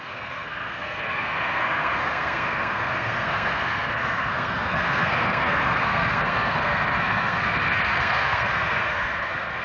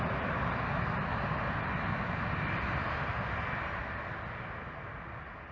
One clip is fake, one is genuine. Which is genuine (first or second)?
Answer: second